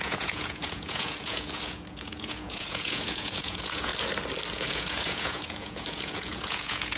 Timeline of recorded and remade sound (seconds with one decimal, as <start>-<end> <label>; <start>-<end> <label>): 0.0-3.9 remade; 3.9-4.5 recorded; 4.5-7.0 remade